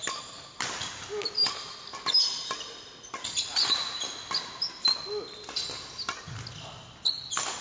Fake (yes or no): no